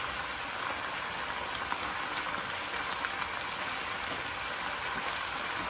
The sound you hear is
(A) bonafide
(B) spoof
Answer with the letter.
A